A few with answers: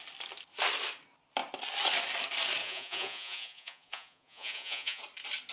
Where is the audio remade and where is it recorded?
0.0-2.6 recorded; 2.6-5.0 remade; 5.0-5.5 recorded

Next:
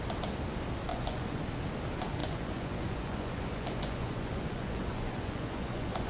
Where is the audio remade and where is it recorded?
0.0-0.9 recorded; 0.9-1.4 remade; 1.4-2.2 recorded; 2.2-6.1 remade

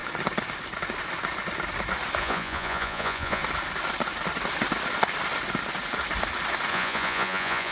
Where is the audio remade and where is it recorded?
0.0-2.2 recorded; 2.2-3.4 remade; 3.4-6.7 recorded; 6.7-7.7 remade

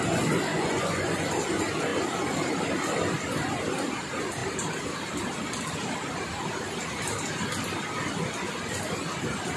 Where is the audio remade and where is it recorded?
0.0-0.5 recorded; 0.5-1.3 remade; 1.3-9.6 recorded

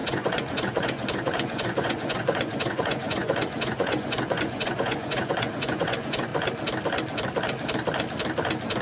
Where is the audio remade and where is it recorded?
0.0-6.3 remade; 6.3-8.8 recorded

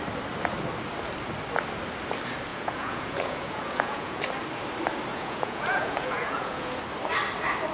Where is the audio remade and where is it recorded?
0.0-2.5 recorded; 2.5-4.2 remade; 4.2-5.1 recorded; 5.1-6.8 remade; 6.8-7.7 recorded